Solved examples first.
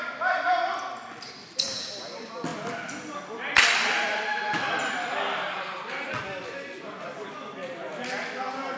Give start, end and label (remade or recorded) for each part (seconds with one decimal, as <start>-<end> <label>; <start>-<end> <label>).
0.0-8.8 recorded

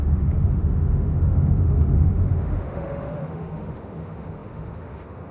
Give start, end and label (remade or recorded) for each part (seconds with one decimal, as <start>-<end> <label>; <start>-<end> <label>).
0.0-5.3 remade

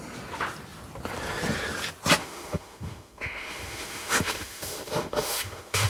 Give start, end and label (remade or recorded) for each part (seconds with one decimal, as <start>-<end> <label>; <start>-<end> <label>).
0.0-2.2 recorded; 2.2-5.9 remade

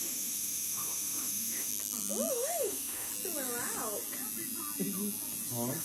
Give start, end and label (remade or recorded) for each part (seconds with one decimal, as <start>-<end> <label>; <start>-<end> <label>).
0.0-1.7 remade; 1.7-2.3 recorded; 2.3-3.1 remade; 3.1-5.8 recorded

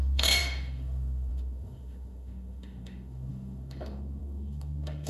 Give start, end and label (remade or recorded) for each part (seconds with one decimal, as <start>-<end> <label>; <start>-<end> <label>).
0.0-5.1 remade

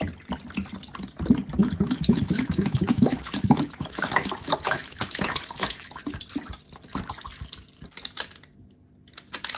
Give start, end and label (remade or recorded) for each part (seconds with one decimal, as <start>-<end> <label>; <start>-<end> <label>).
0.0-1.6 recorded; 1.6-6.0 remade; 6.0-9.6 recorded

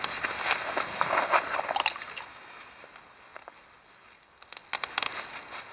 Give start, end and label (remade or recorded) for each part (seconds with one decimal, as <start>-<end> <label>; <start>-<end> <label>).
0.0-2.3 recorded; 2.3-2.8 remade; 2.8-5.7 recorded